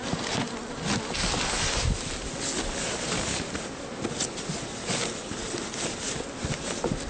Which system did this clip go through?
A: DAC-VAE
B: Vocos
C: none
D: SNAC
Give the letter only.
C